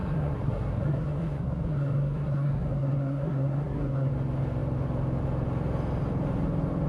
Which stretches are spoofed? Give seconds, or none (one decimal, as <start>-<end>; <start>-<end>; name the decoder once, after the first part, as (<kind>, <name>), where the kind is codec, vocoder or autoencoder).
0.0-4.1 (codec, SNAC)